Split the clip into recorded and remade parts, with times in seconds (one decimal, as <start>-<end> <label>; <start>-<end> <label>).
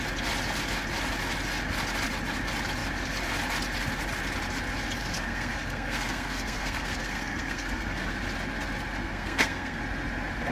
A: 0.0-5.0 recorded; 5.0-8.1 remade; 8.1-9.0 recorded; 9.0-9.8 remade; 9.8-10.5 recorded